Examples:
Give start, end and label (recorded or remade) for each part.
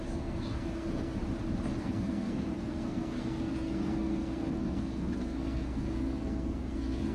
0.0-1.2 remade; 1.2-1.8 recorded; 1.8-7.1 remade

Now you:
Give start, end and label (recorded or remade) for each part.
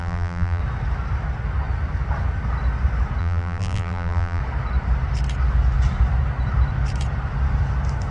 0.0-0.6 remade; 0.6-3.2 recorded; 3.2-4.4 remade; 4.4-8.1 recorded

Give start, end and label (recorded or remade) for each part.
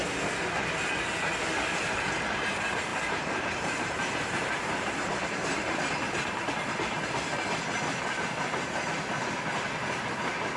0.0-2.9 recorded; 2.9-6.5 remade; 6.5-10.6 recorded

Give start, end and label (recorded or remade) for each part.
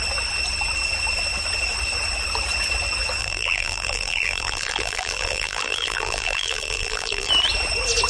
0.0-3.2 recorded; 3.2-7.3 remade; 7.3-8.1 recorded